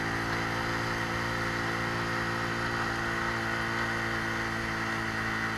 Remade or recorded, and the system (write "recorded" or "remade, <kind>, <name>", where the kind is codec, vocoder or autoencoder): recorded